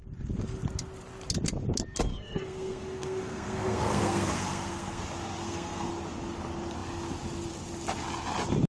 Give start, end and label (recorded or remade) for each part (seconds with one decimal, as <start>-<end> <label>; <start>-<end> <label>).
0.0-2.1 recorded; 2.1-5.0 remade; 5.0-5.4 recorded; 5.4-5.9 remade; 5.9-8.7 recorded